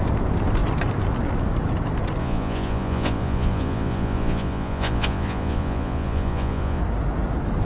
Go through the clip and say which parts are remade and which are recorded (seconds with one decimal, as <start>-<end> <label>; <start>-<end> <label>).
0.0-2.2 recorded; 2.2-6.8 remade; 6.8-7.6 recorded